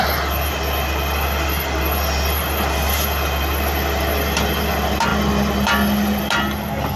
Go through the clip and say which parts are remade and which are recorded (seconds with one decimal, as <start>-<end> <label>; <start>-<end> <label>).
0.0-7.0 recorded